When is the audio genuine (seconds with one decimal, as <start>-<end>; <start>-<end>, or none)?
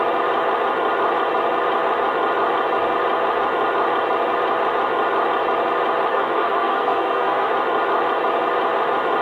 0.0-6.1; 7.5-9.2